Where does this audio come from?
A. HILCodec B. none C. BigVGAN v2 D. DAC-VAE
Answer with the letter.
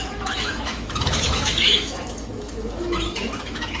D